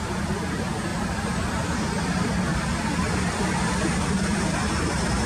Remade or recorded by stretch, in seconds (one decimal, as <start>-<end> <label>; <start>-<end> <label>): 0.0-0.9 recorded; 0.9-1.8 remade; 1.8-5.3 recorded